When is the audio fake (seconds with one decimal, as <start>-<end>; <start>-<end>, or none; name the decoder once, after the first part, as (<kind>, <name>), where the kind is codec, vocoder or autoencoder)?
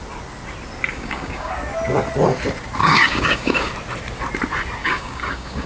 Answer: 0.9-1.5 (codec, DAC); 2.8-3.7; 4.8-5.7